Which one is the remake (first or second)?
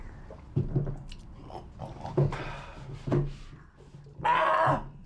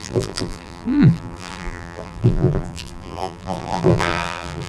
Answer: second